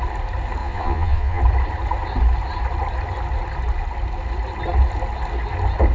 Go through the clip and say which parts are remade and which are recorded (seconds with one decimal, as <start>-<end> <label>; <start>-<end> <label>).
0.0-0.6 recorded; 0.6-1.4 remade; 1.4-5.9 recorded